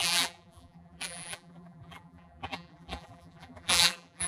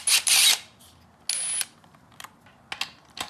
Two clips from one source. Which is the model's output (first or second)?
first